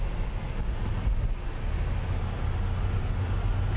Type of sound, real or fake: real